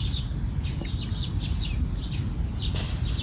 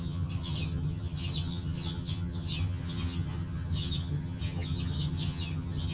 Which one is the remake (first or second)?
second